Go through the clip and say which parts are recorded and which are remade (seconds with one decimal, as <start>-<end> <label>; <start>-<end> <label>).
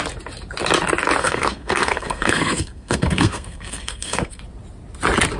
0.0-1.2 recorded; 1.2-4.4 remade; 4.4-5.4 recorded